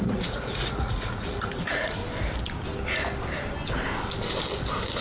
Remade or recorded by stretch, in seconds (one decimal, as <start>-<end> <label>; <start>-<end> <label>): 0.0-2.0 remade; 2.0-5.0 recorded

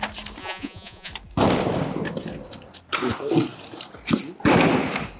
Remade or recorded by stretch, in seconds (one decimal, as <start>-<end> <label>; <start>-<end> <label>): 0.0-0.4 recorded; 0.4-1.1 remade; 1.1-5.2 recorded

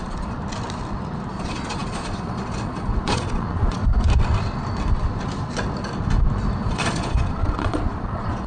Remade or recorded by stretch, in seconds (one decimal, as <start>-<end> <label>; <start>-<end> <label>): 0.0-0.4 remade; 0.4-1.3 recorded; 1.3-3.8 remade; 3.8-6.6 recorded; 6.6-8.5 remade